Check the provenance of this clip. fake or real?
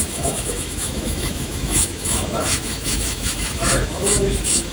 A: fake